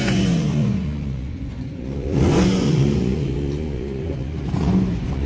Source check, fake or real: fake